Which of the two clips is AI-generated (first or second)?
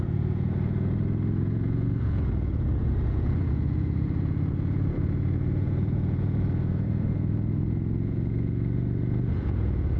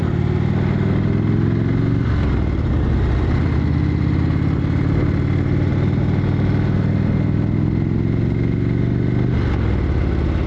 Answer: first